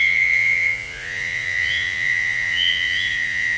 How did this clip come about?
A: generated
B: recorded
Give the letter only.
A